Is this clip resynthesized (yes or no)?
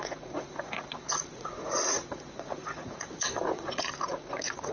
yes